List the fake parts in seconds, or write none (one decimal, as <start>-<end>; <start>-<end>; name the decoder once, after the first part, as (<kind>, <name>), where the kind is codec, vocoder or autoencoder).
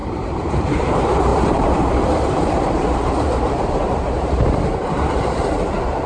0.0-6.1 (vocoder, BigVGAN v2)